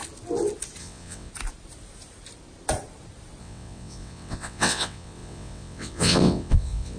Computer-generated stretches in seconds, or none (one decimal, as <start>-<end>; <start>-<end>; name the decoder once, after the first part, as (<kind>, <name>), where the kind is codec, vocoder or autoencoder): 0.8-1.3 (vocoder, WaveNeXt); 3.4-7.0